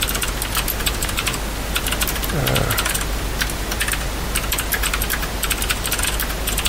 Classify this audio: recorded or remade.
recorded